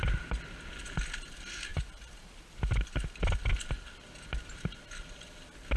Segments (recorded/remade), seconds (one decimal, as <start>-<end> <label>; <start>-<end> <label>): 0.0-5.8 recorded